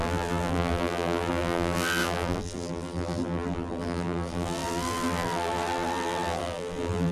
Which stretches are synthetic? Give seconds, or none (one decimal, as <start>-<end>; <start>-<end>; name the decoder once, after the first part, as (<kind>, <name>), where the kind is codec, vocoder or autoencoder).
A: 0.0-7.1 (vocoder, BigVGAN v2)